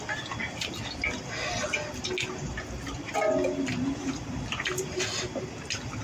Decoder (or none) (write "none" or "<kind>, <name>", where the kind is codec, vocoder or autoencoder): none